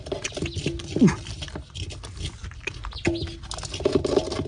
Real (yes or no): yes